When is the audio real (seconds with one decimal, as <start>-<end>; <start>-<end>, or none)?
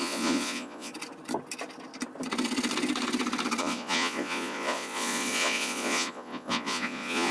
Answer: 0.9-3.6